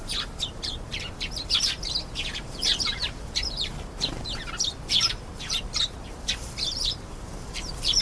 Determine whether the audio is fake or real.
fake